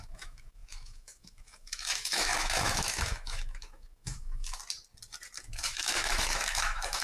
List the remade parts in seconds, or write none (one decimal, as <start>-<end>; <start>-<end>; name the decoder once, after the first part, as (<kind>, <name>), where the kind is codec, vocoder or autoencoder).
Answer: 0.0-4.6 (autoencoder, DAC-VAE); 5.4-7.0